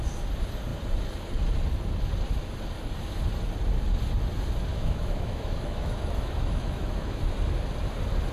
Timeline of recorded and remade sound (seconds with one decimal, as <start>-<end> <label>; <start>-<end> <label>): 0.0-4.7 recorded; 4.7-7.2 remade; 7.2-8.3 recorded